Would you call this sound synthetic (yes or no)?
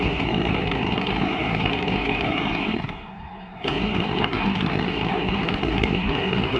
yes